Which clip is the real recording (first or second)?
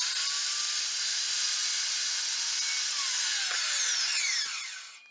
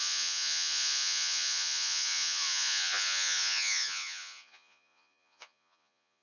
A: first